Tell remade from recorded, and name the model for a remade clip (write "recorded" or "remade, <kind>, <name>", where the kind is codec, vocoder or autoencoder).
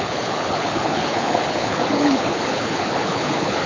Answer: remade, codec, HILCodec